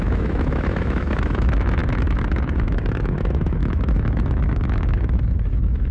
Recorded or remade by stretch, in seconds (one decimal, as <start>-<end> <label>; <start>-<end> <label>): 0.0-5.9 remade

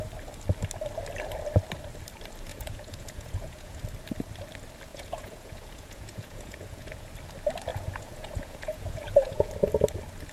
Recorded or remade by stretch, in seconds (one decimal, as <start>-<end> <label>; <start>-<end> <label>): 0.0-2.5 recorded; 2.5-3.8 remade; 3.8-4.9 recorded; 4.9-7.1 remade; 7.1-7.7 recorded; 7.7-9.5 remade; 9.5-10.3 recorded

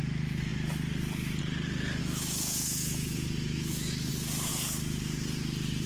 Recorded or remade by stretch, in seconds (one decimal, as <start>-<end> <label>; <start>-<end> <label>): 0.0-2.0 recorded; 2.0-4.1 remade; 4.1-5.9 recorded

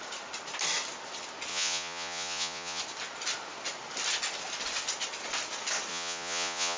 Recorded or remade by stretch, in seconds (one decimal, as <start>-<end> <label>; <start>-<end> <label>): 0.0-1.5 recorded; 1.5-2.8 remade; 2.8-5.9 recorded; 5.9-6.8 remade

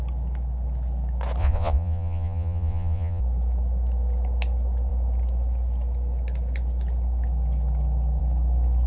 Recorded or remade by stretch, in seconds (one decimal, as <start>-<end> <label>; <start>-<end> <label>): 0.0-1.4 recorded; 1.4-3.2 remade; 3.2-8.9 recorded